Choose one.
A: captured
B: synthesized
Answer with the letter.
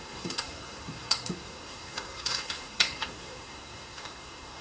B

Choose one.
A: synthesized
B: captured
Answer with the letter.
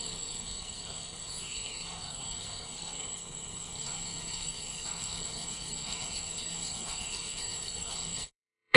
A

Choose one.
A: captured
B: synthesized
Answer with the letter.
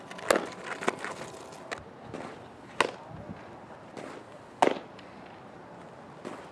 A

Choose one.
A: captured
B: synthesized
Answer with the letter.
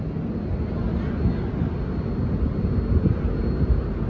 A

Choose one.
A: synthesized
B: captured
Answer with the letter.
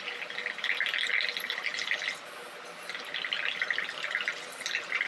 B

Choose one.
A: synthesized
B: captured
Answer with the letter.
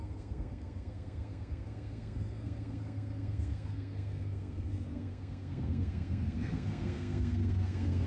A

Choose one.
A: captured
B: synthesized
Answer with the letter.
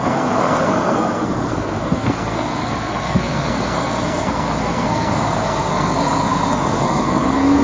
B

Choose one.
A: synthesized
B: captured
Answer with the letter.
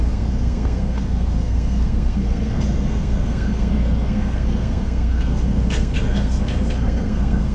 A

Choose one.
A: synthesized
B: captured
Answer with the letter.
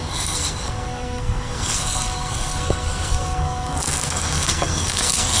A